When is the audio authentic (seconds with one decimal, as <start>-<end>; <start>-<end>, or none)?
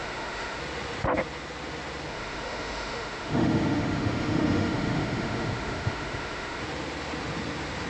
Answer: 0.6-2.1; 6.6-7.9